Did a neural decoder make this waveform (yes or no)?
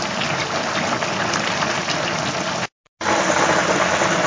no